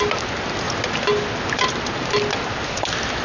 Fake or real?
real